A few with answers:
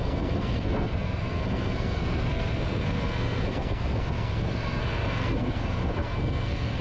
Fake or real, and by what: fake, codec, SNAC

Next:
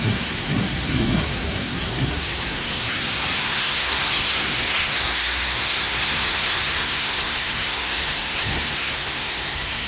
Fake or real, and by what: fake, codec, SNAC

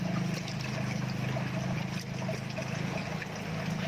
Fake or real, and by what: real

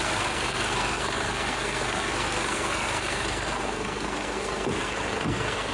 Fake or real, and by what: fake, codec, SNAC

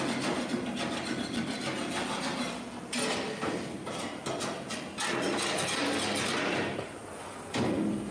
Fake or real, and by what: real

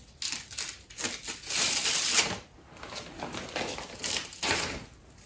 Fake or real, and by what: real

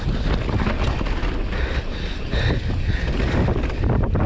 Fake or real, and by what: real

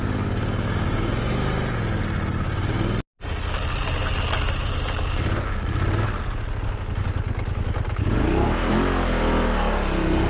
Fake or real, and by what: real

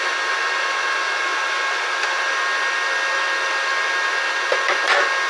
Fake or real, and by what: real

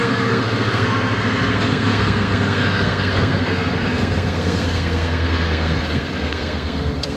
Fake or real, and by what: fake, codec, SNAC